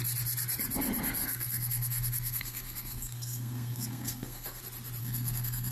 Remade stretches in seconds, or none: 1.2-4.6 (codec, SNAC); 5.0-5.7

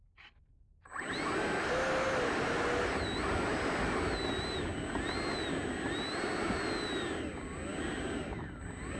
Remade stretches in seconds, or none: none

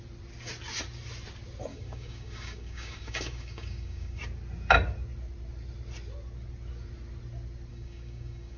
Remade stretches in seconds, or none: 1.7-4.2 (codec, DAC); 7.7-8.6

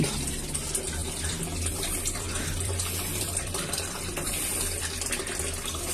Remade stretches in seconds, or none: 1.0-4.5 (vocoder, BigVGAN v2)

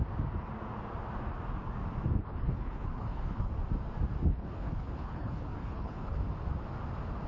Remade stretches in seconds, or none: 2.2-3.5 (codec, HILCodec); 4.3-6.2

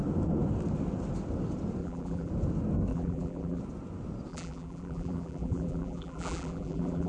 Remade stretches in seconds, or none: 1.8-2.3 (vocoder, BigVGAN v2); 2.9-3.6; 4.3-7.1